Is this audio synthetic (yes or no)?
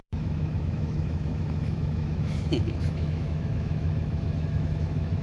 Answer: yes